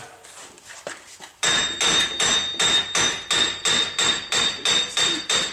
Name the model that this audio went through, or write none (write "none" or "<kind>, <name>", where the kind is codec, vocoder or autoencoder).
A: none